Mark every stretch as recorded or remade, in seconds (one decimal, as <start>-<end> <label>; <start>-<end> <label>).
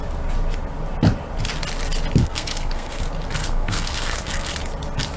0.0-2.2 recorded; 2.2-3.0 remade; 3.0-3.4 recorded; 3.4-4.5 remade; 4.5-5.2 recorded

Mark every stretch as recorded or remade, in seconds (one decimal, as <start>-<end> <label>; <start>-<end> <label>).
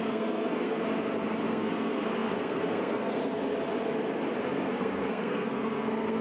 0.0-0.8 remade; 0.8-1.5 recorded; 1.5-3.2 remade; 3.2-4.4 recorded; 4.4-6.2 remade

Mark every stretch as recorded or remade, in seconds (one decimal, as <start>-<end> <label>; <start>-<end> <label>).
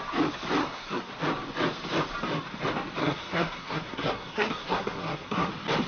0.0-0.6 recorded; 0.6-1.1 remade; 1.1-3.0 recorded; 3.0-5.5 remade; 5.5-5.9 recorded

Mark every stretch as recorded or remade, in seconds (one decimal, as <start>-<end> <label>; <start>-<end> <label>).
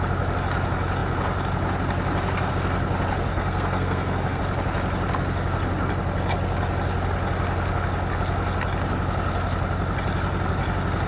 0.0-3.3 recorded; 3.3-4.4 remade; 4.4-11.1 recorded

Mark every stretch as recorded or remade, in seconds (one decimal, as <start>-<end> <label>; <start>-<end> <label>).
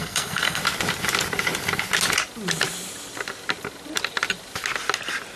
0.0-0.6 remade; 0.6-5.4 recorded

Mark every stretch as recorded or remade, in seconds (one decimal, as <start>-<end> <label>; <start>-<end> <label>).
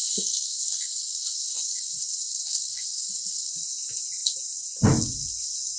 0.0-3.5 remade; 3.5-5.8 recorded